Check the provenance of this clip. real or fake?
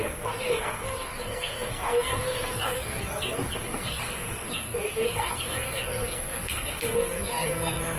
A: fake